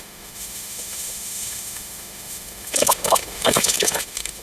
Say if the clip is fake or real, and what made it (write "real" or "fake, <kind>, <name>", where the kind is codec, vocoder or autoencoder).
fake, autoencoder, DAC-VAE